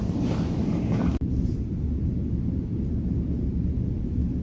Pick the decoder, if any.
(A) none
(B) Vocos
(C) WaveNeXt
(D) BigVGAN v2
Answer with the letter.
A